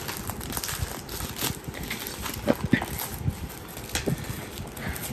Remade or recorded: recorded